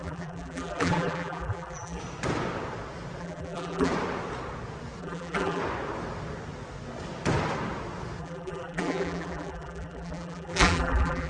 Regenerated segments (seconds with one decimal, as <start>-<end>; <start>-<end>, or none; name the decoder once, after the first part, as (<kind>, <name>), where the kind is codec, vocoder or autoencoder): 0.0-2.0 (vocoder, BigVGAN v2); 3.2-3.9; 5.0-5.6; 8.2-11.3